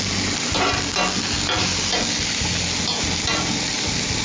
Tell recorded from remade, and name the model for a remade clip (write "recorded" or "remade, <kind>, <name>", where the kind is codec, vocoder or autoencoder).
recorded